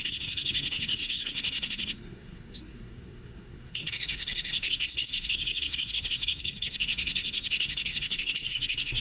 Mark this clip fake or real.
fake